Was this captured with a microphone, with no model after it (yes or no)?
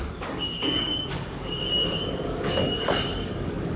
no